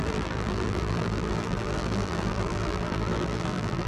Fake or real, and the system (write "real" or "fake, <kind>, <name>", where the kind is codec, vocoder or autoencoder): fake, vocoder, BigVGAN v2